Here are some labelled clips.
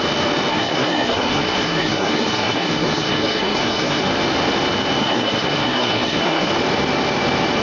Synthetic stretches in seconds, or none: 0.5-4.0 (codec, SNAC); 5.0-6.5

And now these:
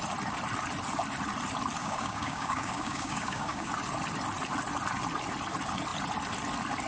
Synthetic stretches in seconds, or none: 1.8-3.7 (codec, DAC)

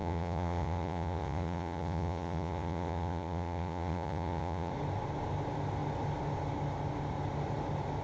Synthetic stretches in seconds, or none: 0.0-4.7 (vocoder, Vocos)